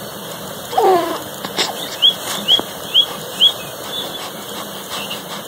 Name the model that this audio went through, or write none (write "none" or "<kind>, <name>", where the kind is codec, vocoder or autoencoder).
vocoder, BigVGAN v2